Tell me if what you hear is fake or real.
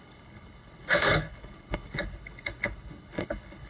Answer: fake